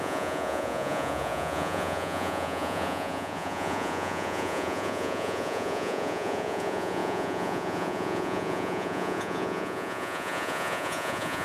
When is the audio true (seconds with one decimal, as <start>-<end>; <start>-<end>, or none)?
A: none